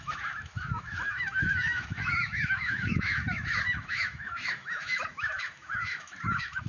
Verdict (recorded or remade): remade